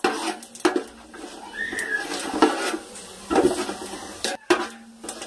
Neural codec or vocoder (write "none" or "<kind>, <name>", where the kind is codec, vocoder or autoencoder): none